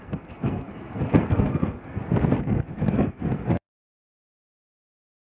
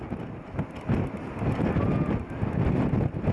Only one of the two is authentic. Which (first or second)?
second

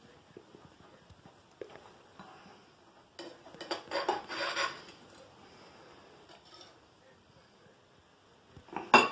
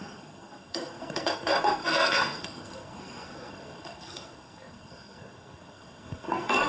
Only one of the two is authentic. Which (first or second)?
first